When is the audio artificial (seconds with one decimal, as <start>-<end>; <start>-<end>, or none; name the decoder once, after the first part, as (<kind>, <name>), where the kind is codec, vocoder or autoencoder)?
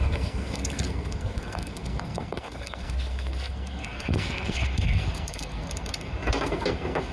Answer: 0.0-7.1 (codec, SNAC)